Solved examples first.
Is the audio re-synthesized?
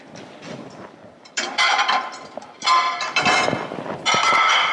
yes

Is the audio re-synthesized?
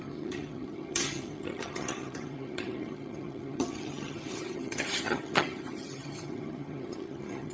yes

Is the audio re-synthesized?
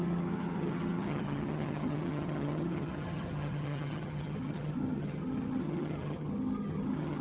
yes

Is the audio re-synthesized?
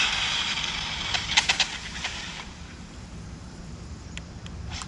yes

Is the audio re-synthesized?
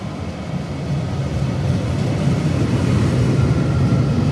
no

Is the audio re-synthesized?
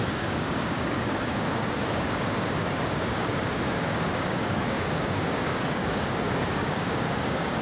yes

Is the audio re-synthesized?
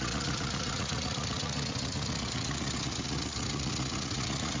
yes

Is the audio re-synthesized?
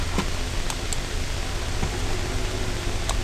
no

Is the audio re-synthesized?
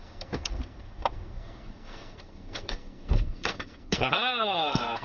yes